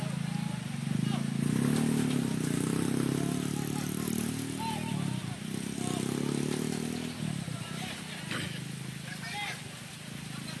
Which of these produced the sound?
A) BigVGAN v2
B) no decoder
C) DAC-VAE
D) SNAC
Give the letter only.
B